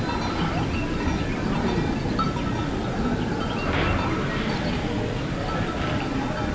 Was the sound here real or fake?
real